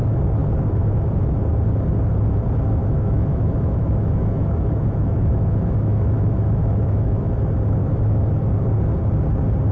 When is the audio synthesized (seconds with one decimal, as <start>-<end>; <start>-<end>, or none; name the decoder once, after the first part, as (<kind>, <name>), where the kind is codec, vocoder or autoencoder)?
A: 2.8-7.2 (autoencoder, DAC-VAE); 7.8-8.4